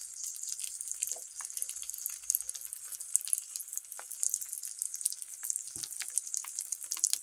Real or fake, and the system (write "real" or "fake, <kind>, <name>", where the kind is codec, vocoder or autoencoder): real